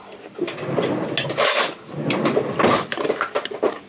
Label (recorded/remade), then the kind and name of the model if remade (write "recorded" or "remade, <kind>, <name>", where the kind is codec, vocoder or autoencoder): recorded